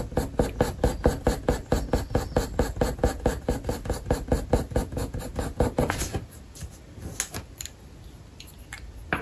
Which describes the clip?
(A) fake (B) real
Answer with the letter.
B